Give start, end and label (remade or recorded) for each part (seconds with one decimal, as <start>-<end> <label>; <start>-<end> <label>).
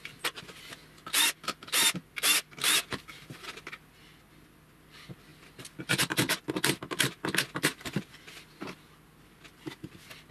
0.0-10.3 recorded